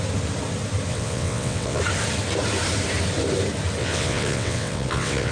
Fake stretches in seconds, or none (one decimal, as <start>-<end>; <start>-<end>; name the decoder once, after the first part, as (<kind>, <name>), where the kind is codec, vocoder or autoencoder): 0.9-1.8 (vocoder, WaveNeXt); 3.8-5.3